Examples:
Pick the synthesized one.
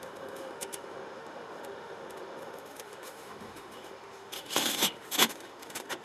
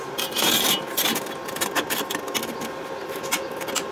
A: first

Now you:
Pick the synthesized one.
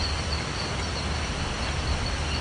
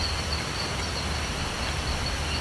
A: second